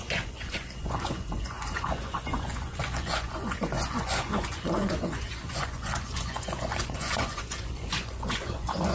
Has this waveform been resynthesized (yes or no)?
yes